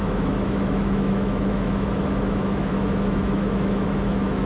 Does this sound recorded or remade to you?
remade